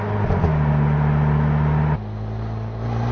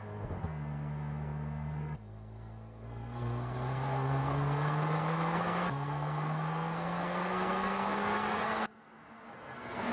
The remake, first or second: second